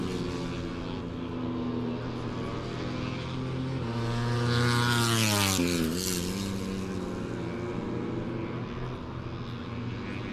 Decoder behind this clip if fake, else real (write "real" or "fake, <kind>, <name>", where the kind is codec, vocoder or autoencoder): real